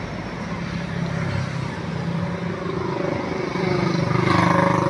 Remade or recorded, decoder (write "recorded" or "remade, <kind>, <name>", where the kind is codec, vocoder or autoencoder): recorded